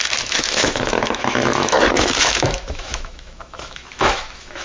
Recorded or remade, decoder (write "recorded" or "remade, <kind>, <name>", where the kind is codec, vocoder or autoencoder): remade, autoencoder, DAC-VAE